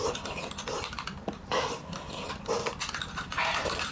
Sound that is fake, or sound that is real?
real